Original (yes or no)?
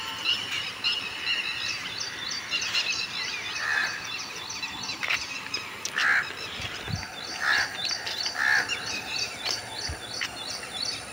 yes